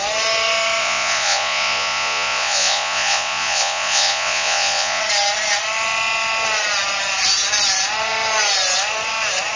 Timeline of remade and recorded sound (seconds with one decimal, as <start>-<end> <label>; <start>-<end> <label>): 0.0-0.8 recorded; 0.8-5.0 remade; 5.0-9.6 recorded